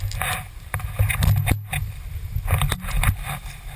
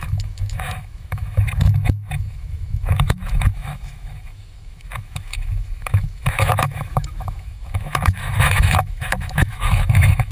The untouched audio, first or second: first